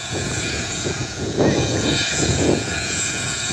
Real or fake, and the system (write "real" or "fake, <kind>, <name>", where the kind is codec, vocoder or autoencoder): fake, vocoder, Vocos